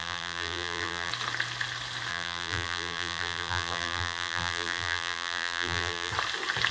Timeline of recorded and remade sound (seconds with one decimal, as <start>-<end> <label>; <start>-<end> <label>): 0.0-1.1 remade; 1.1-2.1 recorded; 2.1-6.1 remade; 6.1-6.7 recorded

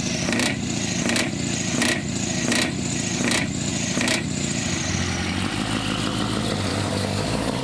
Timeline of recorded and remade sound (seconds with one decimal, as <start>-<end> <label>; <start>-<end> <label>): 0.0-6.7 recorded; 6.7-7.6 remade

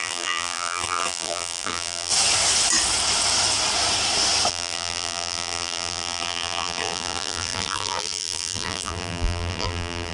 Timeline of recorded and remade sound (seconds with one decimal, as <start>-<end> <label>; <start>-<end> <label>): 0.0-2.1 remade; 2.1-4.5 recorded; 4.5-10.1 remade

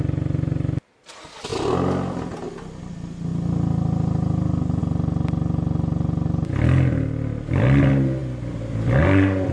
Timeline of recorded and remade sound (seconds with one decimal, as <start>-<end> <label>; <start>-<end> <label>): 0.0-9.5 recorded